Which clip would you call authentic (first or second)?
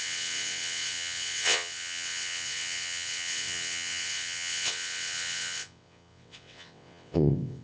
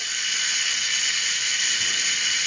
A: second